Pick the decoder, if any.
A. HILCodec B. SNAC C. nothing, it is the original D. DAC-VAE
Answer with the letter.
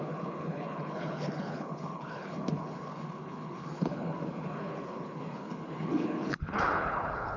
A